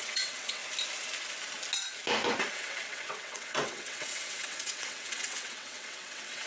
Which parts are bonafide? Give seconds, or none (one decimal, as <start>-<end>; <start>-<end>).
0.6-2.5